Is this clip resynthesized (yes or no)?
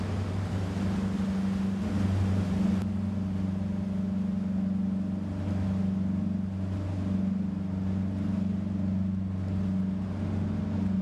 no